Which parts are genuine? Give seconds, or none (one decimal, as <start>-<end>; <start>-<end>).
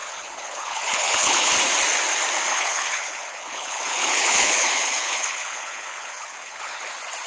1.5-2.5; 6.8-7.3